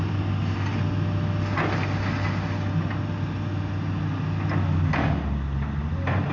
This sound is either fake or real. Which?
real